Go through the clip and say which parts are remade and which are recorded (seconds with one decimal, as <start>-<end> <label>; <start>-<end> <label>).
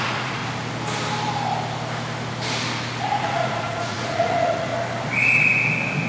0.0-0.4 remade; 0.4-3.1 recorded; 3.1-4.7 remade; 4.7-6.1 recorded